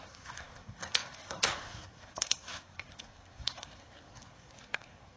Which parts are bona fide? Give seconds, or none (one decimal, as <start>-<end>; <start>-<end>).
none

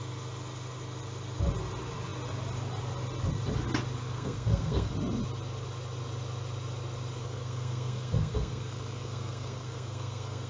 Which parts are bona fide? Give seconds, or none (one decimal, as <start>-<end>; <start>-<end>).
0.0-4.0; 4.9-7.2

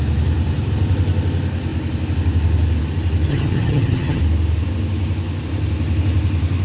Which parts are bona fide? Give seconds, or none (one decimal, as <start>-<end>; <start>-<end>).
0.0-3.3; 4.2-6.6

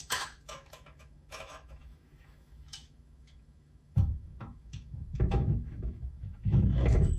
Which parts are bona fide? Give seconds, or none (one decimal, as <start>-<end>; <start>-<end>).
none

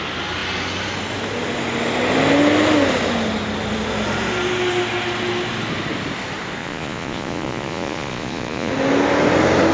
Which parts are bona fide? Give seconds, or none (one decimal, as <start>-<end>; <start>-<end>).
0.0-6.6; 8.7-9.7

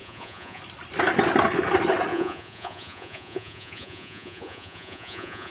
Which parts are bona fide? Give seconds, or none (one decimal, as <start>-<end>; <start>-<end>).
0.6-2.1